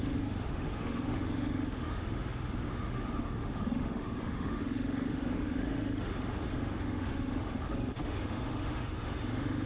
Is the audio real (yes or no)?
no